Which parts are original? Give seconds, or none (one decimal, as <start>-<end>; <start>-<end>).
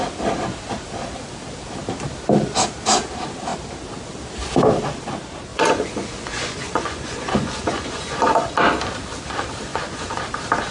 0.0-5.5; 8.5-9.7; 10.2-10.7